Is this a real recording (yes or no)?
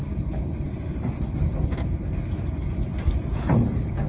yes